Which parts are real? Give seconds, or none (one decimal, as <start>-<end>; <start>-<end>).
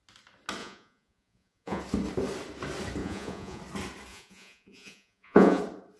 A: 0.0-0.6; 1.8-3.0; 3.6-4.1; 5.6-6.0